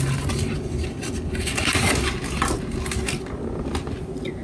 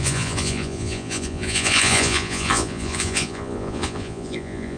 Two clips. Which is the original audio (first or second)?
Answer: first